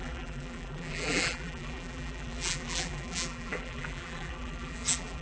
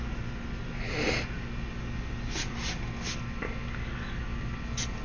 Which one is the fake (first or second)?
first